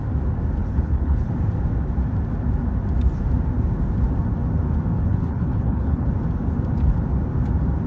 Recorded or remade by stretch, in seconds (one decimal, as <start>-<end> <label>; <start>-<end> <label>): 0.0-0.6 recorded; 0.6-1.3 remade; 1.3-5.0 recorded; 5.0-6.1 remade; 6.1-7.9 recorded